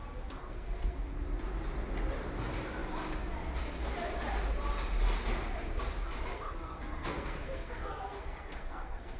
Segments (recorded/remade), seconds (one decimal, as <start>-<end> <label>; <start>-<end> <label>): 0.0-0.4 recorded; 0.4-1.1 remade; 1.1-6.3 recorded; 6.3-9.2 remade